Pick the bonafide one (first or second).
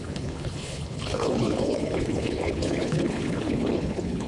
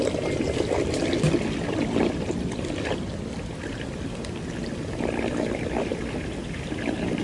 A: second